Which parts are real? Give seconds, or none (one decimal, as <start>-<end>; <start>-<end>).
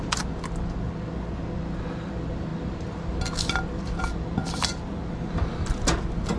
0.0-6.4